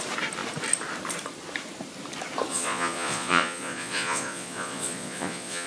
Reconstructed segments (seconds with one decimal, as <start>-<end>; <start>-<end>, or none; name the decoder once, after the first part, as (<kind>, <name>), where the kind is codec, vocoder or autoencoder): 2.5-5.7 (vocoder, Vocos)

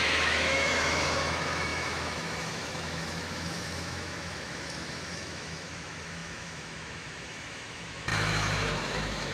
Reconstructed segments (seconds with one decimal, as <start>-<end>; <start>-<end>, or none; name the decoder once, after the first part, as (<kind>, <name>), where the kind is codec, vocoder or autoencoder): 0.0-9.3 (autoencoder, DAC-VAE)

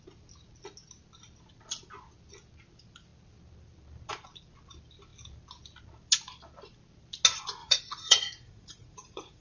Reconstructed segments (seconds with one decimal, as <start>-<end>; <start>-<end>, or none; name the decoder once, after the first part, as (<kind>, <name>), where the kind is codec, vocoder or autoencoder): 7.6-9.4 (vocoder, Vocos)

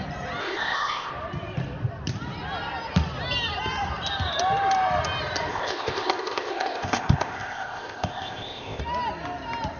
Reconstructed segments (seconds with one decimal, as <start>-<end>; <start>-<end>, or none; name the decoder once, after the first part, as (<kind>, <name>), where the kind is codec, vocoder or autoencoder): 0.4-1.1 (codec, ZipCodec); 5.5-8.8

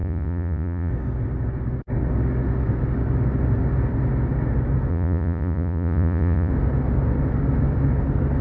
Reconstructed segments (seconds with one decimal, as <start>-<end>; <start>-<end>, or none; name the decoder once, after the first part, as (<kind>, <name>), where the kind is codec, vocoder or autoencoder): 0.0-0.9 (vocoder, Vocos); 4.9-6.5